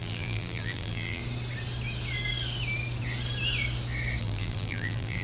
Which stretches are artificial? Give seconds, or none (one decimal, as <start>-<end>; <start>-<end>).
0.0-1.2; 4.2-5.2

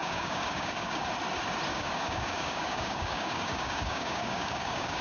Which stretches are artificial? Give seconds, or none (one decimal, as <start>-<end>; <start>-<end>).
0.0-1.0; 1.7-5.0

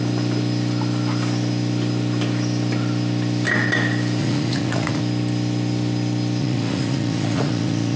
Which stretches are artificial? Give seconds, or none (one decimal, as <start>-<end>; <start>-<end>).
4.2-5.0; 6.4-8.0

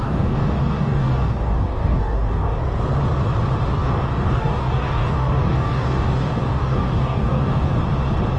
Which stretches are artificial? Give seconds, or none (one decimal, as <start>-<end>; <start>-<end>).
0.0-2.6; 3.7-7.7

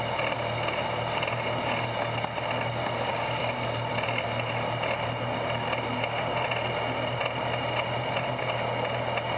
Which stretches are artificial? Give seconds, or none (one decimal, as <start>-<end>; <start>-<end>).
2.8-3.5